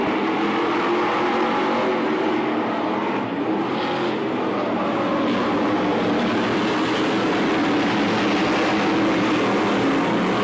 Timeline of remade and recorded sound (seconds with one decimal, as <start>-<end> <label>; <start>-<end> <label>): 0.0-10.4 recorded